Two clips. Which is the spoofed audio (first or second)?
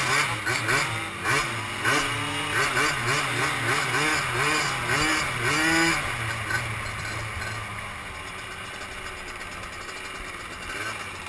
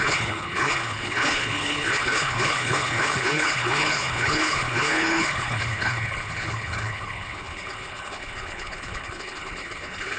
second